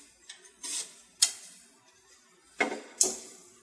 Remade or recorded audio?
recorded